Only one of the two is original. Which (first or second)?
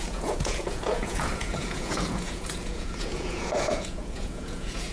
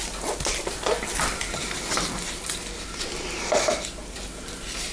second